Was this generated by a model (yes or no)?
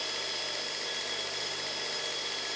yes